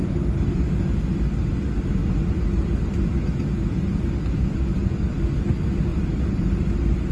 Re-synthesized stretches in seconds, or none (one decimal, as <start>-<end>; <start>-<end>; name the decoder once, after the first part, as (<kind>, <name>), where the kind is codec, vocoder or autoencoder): 2.0-3.1 (vocoder, BigVGAN v2); 5.9-7.1